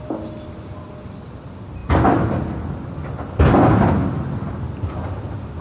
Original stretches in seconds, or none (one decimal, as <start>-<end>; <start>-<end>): 0.0-5.6